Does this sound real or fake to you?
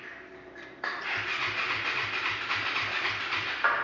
real